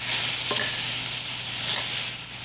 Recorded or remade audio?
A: recorded